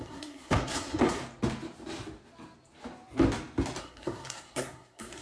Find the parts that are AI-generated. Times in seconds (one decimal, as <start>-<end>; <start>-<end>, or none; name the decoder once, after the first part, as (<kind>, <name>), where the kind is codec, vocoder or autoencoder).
0.0-1.2 (codec, SNAC); 3.8-5.2